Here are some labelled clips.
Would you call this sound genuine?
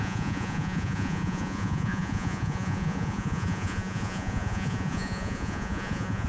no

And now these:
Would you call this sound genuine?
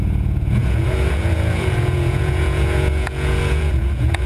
no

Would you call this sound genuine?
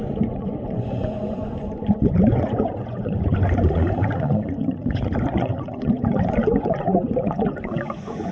no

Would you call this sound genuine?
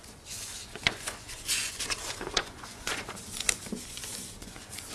no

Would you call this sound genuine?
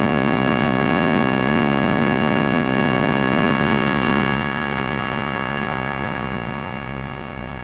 no